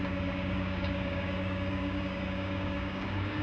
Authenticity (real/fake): fake